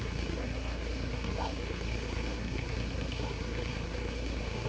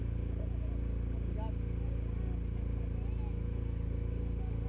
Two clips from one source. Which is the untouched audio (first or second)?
second